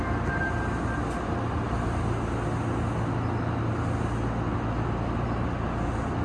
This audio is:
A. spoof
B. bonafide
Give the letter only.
B